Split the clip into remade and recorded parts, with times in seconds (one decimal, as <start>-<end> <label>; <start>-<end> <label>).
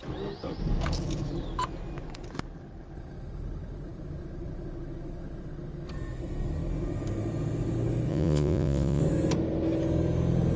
0.0-8.1 recorded; 8.1-9.0 remade; 9.0-10.6 recorded